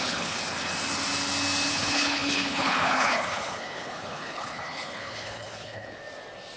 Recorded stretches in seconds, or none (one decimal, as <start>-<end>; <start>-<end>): 0.4-1.7; 6.0-6.6